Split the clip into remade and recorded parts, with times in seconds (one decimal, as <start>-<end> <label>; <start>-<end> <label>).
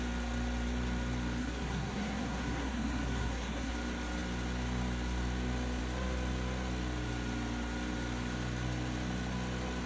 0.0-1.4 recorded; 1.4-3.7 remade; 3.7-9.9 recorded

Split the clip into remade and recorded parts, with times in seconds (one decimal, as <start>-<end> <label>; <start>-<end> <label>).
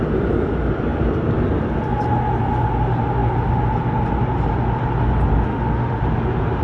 0.0-5.5 recorded; 5.5-6.0 remade; 6.0-6.6 recorded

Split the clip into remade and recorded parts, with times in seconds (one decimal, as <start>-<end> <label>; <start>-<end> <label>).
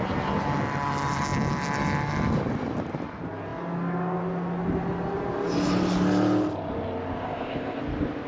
0.0-7.2 recorded; 7.2-7.8 remade; 7.8-8.3 recorded